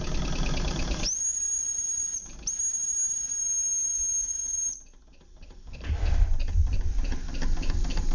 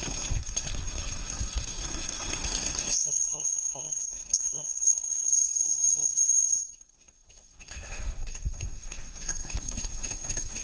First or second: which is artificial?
second